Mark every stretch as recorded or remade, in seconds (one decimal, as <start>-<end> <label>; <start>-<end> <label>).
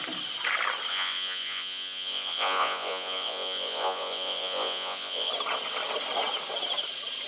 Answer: 0.0-0.9 recorded; 0.9-5.3 remade; 5.3-7.3 recorded